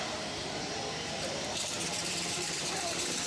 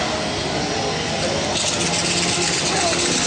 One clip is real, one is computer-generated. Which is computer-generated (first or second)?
first